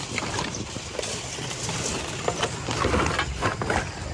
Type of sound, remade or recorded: recorded